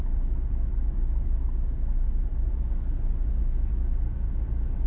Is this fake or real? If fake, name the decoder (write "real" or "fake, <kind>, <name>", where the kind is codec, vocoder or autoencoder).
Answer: real